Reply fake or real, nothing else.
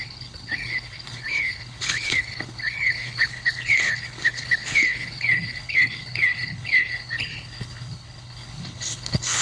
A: fake